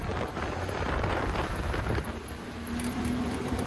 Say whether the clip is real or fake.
fake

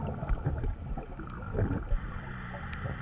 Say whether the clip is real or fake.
fake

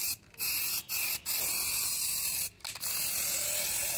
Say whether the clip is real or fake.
real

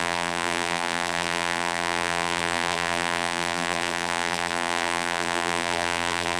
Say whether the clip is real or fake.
fake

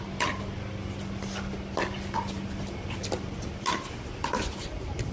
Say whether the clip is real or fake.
real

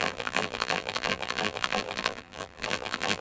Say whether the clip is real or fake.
fake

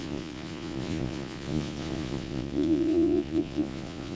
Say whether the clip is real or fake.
fake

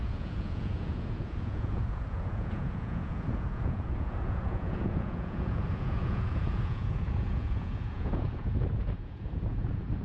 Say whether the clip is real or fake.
fake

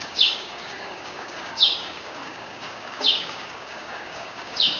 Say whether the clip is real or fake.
fake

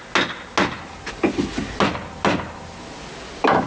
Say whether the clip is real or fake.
real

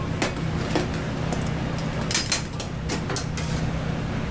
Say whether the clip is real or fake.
real